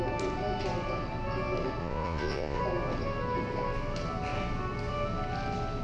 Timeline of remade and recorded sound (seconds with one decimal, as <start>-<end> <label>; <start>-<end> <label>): 0.0-1.8 recorded; 1.8-2.6 remade; 2.6-5.8 recorded